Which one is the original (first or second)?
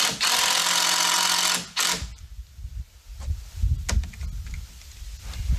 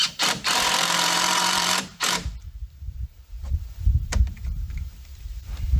first